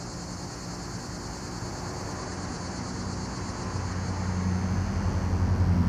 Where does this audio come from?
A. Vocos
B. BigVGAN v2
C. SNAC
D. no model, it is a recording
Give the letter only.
D